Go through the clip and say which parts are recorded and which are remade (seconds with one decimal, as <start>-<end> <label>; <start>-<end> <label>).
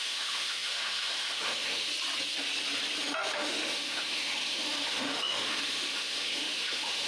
0.0-1.9 remade; 1.9-3.0 recorded; 3.0-7.1 remade